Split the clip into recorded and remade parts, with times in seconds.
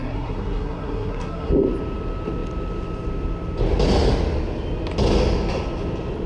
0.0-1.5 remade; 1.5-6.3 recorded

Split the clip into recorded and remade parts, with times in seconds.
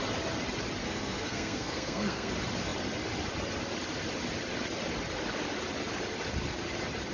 0.0-0.8 recorded; 0.8-2.3 remade; 2.3-7.1 recorded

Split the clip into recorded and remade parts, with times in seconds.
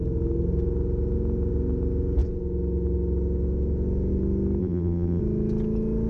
0.0-4.6 recorded; 4.6-5.2 remade; 5.2-6.1 recorded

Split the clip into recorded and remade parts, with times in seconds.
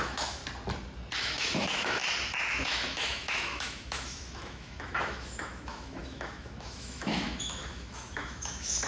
0.0-0.4 remade; 0.4-1.2 recorded; 1.2-2.0 remade; 2.0-2.5 recorded; 2.5-8.9 remade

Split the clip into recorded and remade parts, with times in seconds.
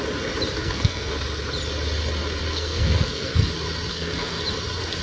0.0-0.6 recorded; 0.6-1.1 remade; 1.1-2.5 recorded; 2.5-3.5 remade; 3.5-3.9 recorded; 3.9-4.4 remade; 4.4-5.0 recorded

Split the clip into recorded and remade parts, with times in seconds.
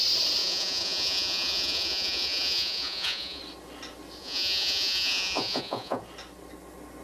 0.0-0.4 recorded; 0.4-3.4 remade; 3.4-4.2 recorded; 4.2-6.0 remade; 6.0-7.0 recorded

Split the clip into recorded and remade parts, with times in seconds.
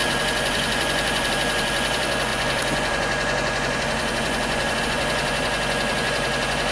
0.0-6.7 remade